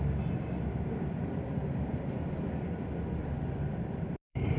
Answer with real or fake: fake